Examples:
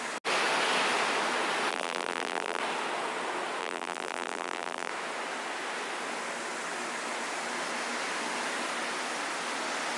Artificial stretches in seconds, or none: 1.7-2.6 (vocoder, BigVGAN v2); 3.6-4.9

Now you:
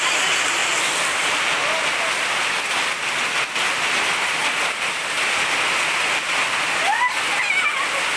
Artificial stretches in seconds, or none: 0.6-1.4 (vocoder, BigVGAN v2)

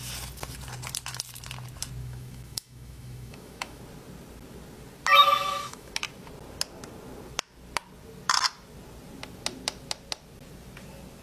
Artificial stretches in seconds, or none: 2.0-3.8 (autoencoder, DAC-VAE); 5.2-5.9